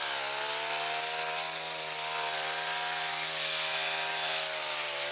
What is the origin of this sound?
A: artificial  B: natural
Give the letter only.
B